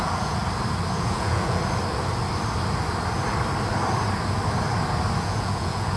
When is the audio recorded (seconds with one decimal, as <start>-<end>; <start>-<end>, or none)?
0.4-0.9; 1.6-5.2